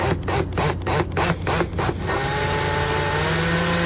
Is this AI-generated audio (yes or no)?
no